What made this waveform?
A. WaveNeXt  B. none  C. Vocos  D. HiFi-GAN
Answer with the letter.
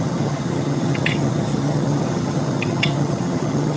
D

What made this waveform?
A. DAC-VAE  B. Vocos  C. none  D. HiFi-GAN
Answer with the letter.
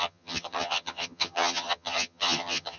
D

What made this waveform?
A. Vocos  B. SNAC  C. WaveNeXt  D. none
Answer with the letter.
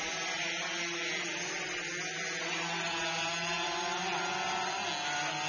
D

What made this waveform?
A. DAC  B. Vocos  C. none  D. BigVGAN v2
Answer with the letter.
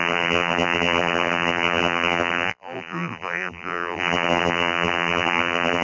D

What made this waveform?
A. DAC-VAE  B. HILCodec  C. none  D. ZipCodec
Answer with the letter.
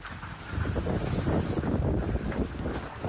C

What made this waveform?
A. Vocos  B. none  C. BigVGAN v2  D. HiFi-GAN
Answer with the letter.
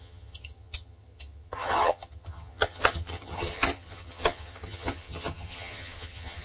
D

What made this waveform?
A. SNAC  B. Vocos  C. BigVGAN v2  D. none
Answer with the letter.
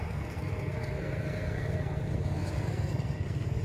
A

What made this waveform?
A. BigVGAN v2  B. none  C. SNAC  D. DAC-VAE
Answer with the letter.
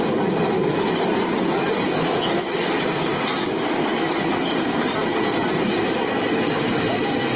B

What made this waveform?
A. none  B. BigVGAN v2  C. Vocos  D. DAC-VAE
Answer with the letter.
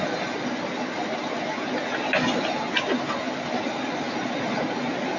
A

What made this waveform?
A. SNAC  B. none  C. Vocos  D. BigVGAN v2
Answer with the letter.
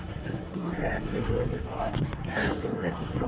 A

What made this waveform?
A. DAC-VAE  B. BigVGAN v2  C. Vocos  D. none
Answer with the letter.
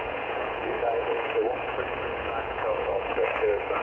C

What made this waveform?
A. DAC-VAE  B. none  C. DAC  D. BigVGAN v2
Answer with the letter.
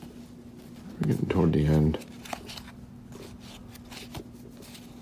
B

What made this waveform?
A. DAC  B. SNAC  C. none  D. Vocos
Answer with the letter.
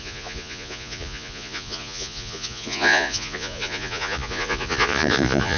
D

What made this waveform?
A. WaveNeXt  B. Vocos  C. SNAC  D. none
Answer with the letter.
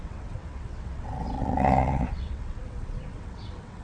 A